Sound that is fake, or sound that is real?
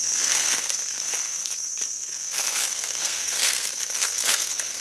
fake